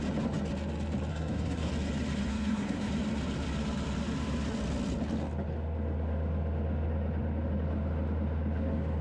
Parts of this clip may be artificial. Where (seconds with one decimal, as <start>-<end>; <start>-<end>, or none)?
1.1-1.7; 2.3-2.9